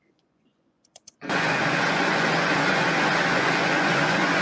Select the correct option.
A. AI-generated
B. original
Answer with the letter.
A